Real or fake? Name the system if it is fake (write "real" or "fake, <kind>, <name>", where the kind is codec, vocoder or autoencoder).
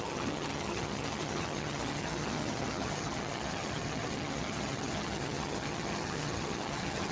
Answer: fake, vocoder, HiFi-GAN